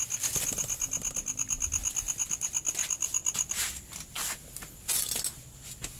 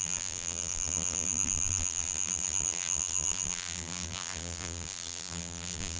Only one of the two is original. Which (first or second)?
first